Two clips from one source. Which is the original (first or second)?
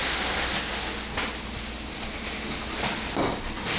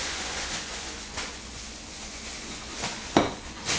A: first